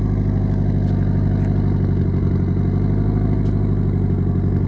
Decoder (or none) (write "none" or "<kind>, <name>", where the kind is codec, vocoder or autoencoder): none